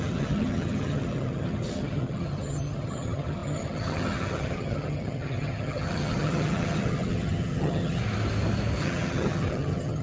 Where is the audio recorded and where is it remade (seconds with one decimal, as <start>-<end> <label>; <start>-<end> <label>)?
0.0-8.0 remade; 8.0-8.8 recorded; 8.8-10.0 remade